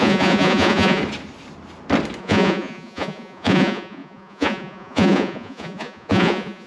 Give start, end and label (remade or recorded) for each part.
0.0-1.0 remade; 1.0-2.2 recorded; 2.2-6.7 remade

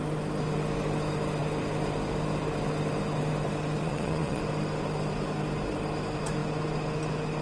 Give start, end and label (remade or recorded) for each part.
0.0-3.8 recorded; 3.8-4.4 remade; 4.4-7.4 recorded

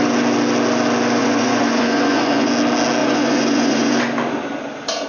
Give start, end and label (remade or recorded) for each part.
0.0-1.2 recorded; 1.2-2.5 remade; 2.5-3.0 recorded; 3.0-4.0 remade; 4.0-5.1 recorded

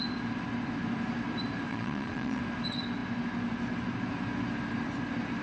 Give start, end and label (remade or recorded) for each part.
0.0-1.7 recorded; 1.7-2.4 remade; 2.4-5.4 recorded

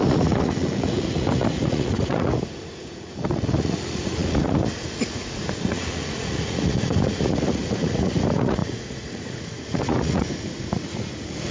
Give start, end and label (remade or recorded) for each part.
0.0-11.5 remade

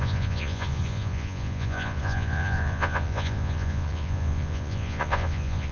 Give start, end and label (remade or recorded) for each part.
0.0-5.7 remade